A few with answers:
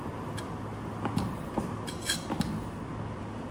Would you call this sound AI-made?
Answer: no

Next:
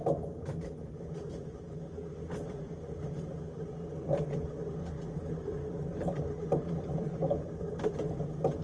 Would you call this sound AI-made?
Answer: no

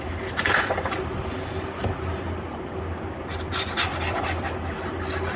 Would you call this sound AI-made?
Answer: no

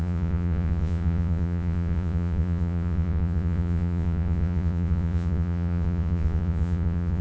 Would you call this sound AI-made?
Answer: yes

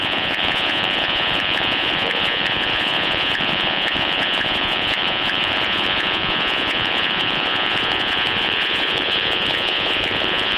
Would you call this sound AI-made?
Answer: yes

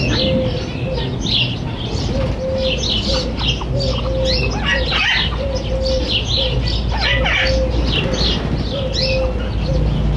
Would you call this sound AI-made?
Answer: no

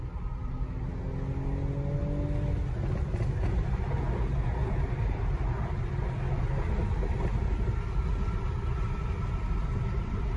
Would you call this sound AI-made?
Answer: no